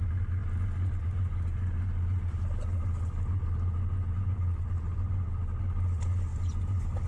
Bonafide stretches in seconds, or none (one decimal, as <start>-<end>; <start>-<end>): 0.0-6.3